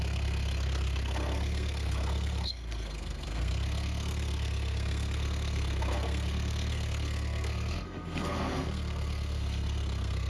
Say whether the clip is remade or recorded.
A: remade